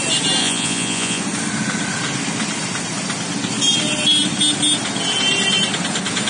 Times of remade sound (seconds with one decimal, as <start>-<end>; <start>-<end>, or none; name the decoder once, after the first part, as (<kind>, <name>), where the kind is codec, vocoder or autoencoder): 0.4-1.2 (vocoder, Vocos)